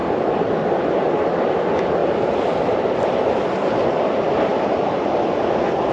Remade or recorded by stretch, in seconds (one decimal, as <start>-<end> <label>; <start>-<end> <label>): 0.0-2.0 recorded; 2.0-3.4 remade; 3.4-4.5 recorded; 4.5-5.4 remade; 5.4-5.9 recorded